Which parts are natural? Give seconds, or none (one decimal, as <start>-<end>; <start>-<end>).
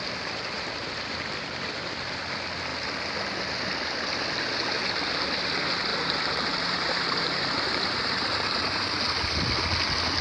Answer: 0.0-5.9; 9.0-10.2